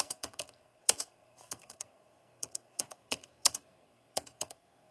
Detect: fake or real fake